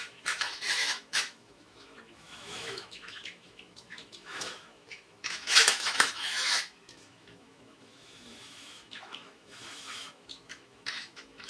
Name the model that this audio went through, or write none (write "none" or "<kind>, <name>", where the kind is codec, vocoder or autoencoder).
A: autoencoder, DAC-VAE